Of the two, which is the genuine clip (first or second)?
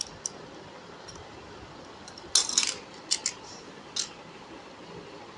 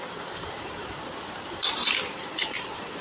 first